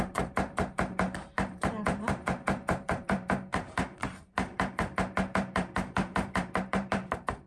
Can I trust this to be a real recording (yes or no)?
no